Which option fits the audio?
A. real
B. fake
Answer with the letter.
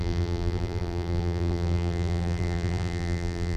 B